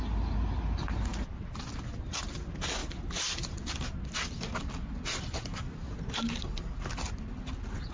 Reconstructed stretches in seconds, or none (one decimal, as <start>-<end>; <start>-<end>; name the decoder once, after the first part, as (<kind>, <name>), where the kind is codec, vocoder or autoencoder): none